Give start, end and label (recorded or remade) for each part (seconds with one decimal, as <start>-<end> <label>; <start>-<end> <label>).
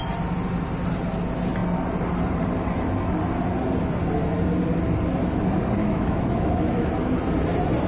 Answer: 0.0-5.8 recorded; 5.8-6.9 remade; 6.9-7.9 recorded